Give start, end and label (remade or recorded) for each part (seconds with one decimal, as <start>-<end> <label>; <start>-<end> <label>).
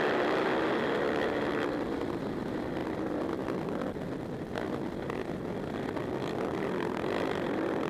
0.0-2.8 recorded; 2.8-3.3 remade; 3.3-7.9 recorded